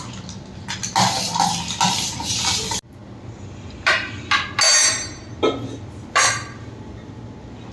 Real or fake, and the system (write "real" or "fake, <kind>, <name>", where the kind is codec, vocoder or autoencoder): real